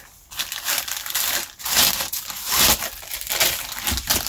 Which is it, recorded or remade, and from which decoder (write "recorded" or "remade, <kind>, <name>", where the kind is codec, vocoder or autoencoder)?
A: recorded